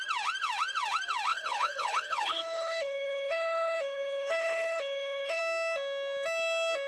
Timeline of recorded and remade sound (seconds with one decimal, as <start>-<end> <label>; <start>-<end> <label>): 0.0-1.3 recorded; 1.3-5.4 remade; 5.4-6.9 recorded